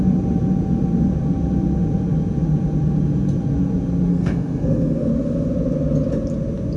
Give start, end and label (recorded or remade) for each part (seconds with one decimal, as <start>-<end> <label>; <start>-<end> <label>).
0.0-4.1 recorded; 4.1-5.1 remade; 5.1-6.8 recorded